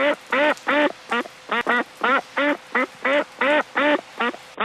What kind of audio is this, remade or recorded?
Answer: recorded